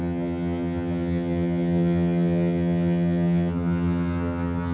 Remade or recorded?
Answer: remade